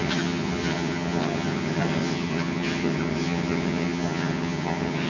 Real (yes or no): no